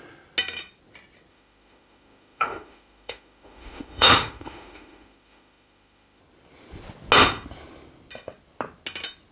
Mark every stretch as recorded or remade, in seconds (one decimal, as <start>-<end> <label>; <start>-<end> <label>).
0.0-1.3 recorded; 1.3-6.2 remade; 6.2-9.3 recorded